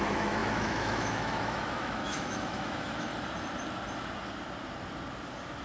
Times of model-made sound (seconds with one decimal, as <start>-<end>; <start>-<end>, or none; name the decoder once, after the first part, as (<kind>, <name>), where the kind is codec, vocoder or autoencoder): 0.0-3.1 (autoencoder, DAC-VAE)